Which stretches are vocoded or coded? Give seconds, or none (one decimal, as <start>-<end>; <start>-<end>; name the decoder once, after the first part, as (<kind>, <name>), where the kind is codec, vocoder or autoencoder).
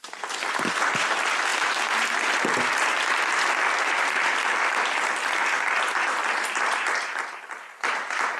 none